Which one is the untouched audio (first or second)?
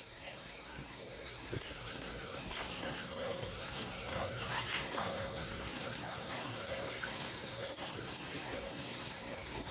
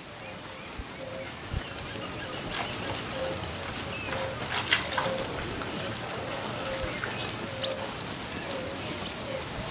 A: second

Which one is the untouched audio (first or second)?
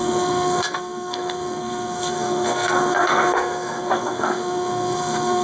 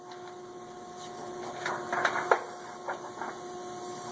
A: second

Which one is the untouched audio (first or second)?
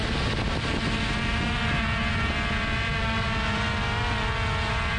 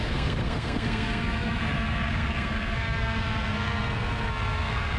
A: first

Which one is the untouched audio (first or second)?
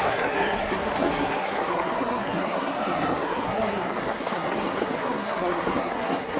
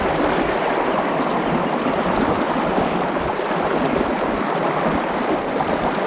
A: second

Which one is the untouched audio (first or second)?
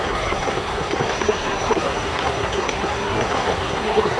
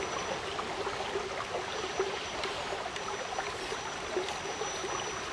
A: second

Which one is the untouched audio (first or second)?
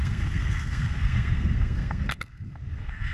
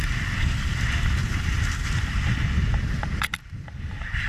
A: second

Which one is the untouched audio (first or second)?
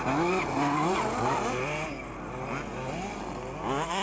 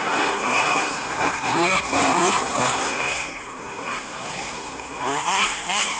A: first